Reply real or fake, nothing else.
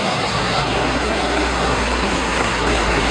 fake